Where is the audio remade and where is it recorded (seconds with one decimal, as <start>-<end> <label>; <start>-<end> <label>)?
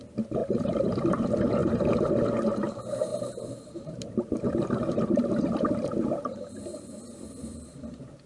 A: 0.0-0.4 recorded; 0.4-1.1 remade; 1.1-1.6 recorded; 1.6-2.1 remade; 2.1-3.1 recorded; 3.1-6.5 remade; 6.5-8.3 recorded